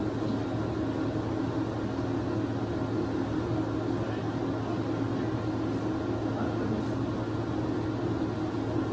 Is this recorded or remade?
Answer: recorded